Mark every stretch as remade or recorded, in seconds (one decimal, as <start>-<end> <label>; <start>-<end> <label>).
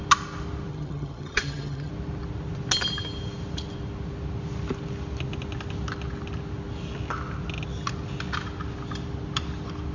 0.0-0.7 recorded; 0.7-1.9 remade; 1.9-9.9 recorded